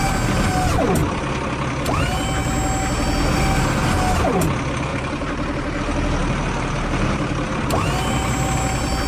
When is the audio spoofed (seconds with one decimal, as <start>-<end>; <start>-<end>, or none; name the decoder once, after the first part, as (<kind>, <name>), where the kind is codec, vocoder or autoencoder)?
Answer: 4.9-5.8 (vocoder, BigVGAN v2); 6.2-9.1